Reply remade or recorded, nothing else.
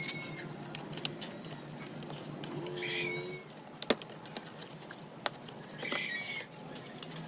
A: recorded